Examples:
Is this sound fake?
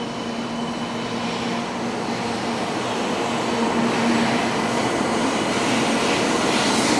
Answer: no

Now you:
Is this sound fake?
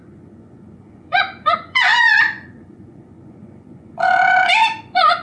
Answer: yes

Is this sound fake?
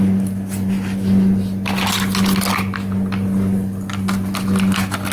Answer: no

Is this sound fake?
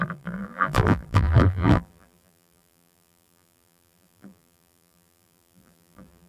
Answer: yes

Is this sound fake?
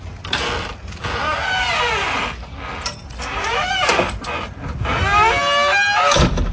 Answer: no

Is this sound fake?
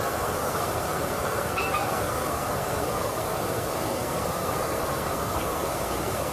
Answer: yes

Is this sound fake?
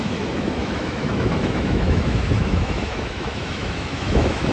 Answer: yes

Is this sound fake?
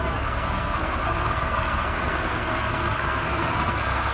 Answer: yes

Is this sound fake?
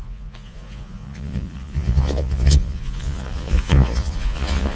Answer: yes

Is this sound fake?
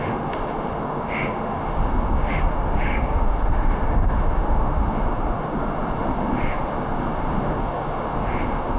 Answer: yes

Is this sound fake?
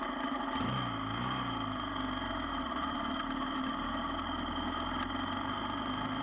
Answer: no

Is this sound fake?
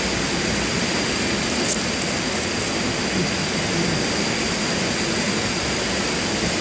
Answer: no